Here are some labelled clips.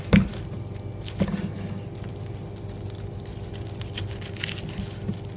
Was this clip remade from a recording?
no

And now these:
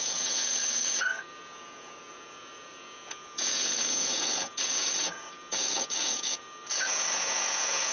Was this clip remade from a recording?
yes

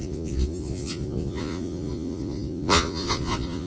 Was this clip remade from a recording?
yes